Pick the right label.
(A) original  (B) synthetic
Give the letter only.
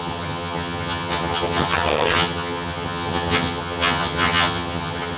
B